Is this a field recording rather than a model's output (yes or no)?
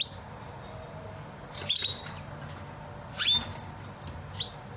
yes